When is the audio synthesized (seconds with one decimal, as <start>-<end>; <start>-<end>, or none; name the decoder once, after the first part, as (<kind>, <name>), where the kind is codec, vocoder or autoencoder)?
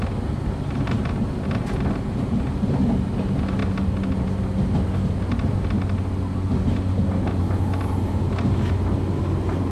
none